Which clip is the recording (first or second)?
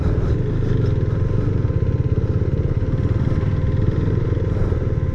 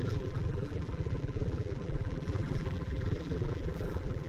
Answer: first